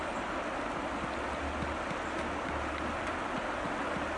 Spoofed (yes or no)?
no